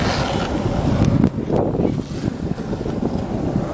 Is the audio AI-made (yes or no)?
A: no